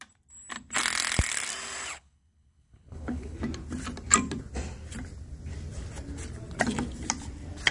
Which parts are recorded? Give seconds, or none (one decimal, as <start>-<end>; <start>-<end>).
0.0-1.9; 3.4-7.7